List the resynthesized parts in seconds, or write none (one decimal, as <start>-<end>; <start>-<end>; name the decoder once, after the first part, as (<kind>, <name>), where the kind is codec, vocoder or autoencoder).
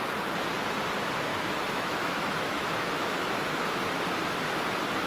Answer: 1.3-3.8 (autoencoder, DAC-VAE)